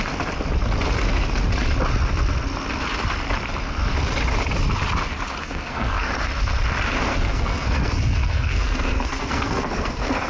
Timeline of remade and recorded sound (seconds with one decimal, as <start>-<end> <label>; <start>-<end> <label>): 0.0-5.4 recorded; 5.4-6.1 remade; 6.1-7.1 recorded; 7.1-10.3 remade